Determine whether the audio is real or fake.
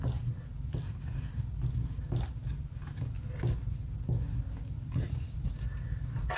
real